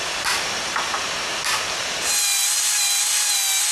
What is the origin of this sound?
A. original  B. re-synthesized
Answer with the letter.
A